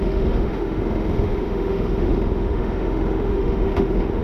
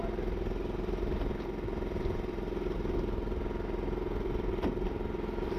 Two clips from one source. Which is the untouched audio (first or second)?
second